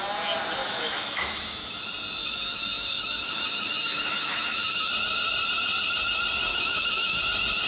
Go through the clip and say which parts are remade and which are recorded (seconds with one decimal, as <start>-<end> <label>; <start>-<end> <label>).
0.0-0.6 recorded; 0.6-1.8 remade; 1.8-2.2 recorded; 2.2-4.9 remade; 4.9-6.5 recorded; 6.5-7.2 remade; 7.2-7.7 recorded